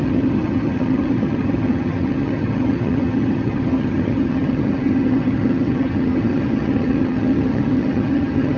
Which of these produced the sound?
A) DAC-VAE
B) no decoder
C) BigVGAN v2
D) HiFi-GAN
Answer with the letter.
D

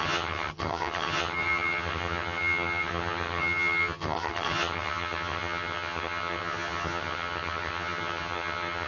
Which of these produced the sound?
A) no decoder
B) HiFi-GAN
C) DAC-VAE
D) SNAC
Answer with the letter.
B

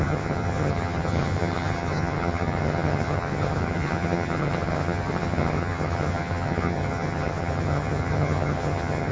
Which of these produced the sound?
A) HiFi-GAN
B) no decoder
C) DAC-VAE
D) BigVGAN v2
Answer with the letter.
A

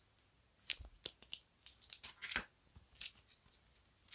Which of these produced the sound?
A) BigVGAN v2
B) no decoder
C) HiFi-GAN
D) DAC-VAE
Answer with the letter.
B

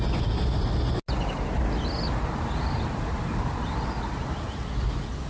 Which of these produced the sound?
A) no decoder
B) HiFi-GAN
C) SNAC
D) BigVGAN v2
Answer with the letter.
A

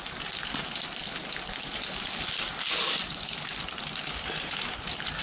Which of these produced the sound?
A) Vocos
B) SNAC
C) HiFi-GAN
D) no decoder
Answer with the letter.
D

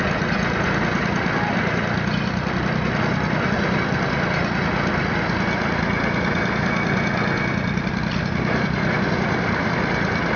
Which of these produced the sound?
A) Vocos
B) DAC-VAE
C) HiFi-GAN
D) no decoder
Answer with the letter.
D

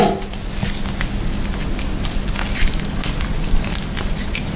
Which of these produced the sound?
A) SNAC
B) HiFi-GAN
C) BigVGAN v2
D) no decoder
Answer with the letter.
D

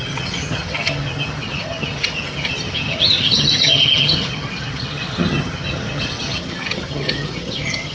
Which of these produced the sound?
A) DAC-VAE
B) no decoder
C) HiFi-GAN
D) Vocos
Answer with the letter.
C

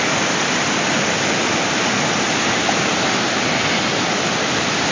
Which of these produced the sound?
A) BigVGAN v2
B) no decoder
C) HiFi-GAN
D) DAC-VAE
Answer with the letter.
B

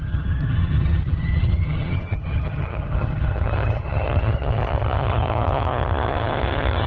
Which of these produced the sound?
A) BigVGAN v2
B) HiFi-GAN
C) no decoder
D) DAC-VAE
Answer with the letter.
B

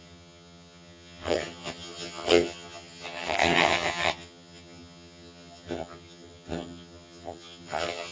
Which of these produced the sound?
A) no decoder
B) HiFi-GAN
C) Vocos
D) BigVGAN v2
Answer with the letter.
B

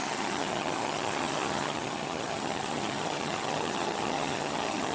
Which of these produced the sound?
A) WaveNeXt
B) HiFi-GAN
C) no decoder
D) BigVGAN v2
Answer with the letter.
B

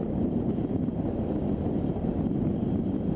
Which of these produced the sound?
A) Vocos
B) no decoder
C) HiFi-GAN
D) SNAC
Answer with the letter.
B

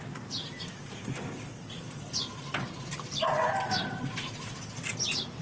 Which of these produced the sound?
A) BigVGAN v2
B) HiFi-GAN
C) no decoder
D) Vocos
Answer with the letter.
C